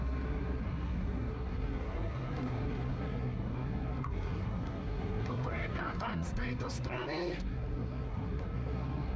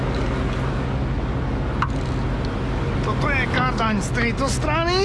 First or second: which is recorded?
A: second